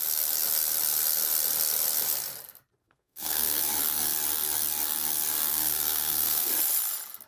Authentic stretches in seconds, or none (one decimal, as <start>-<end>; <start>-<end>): 0.0-2.8; 3.6-5.5; 6.5-7.3